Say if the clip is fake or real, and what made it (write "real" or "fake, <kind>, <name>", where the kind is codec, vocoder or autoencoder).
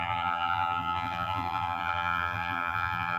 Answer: fake, vocoder, BigVGAN v2